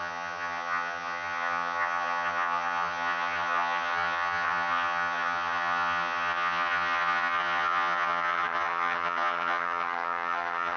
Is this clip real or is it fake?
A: fake